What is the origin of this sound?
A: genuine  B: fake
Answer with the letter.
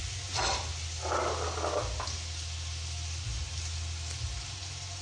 A